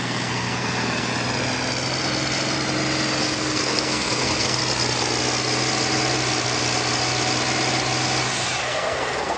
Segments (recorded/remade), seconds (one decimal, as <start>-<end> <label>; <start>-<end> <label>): 0.0-1.1 remade; 1.1-3.2 recorded; 3.2-4.6 remade; 4.6-8.6 recorded; 8.6-9.4 remade